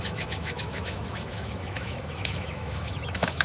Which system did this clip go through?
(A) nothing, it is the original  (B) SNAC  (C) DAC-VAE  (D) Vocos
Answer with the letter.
C